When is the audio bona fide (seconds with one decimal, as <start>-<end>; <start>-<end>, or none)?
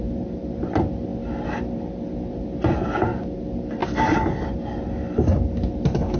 0.0-3.8; 4.5-6.2